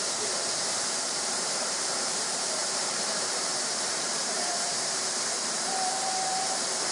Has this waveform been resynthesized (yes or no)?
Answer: yes